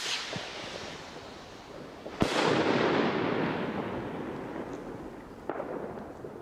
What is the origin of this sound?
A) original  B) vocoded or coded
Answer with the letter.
A